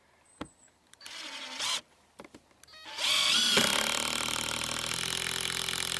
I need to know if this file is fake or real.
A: real